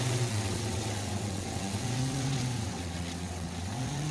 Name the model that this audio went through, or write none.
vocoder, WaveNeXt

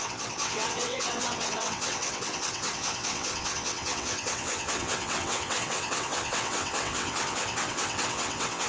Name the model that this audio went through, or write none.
vocoder, WaveNeXt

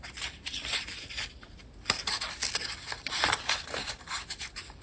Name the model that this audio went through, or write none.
none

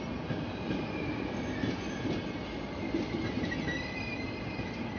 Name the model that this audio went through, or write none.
none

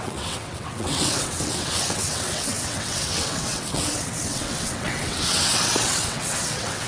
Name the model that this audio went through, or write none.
vocoder, WaveNeXt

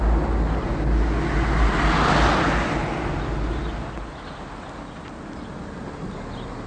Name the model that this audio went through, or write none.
none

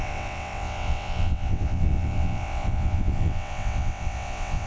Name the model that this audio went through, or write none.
vocoder, WaveNeXt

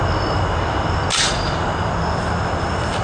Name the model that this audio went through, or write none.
none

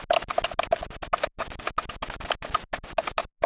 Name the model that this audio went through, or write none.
none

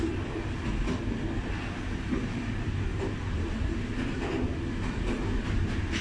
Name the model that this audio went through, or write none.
none